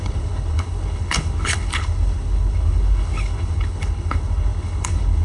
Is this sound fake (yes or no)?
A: yes